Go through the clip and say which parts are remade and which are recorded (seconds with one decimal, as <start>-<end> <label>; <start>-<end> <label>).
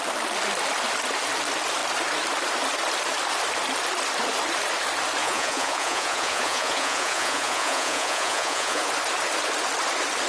0.0-5.2 recorded; 5.2-8.9 remade; 8.9-10.3 recorded